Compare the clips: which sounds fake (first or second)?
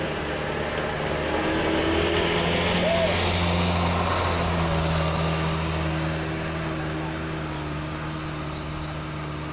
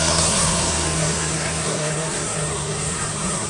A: second